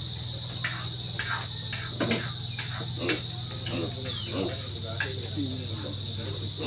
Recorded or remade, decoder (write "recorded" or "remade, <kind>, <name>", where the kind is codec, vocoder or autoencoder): recorded